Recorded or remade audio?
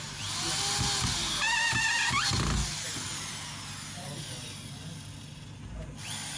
recorded